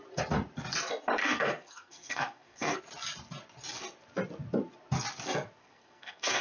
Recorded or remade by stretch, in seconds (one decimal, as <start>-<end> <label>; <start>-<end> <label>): 0.0-1.2 recorded; 1.2-2.8 remade; 2.8-5.6 recorded; 5.6-6.4 remade